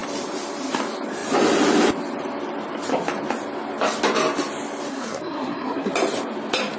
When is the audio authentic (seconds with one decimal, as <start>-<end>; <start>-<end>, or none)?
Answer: 0.0-4.9; 5.9-6.8